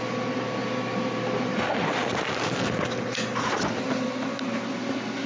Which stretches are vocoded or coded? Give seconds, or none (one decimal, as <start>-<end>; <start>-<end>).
none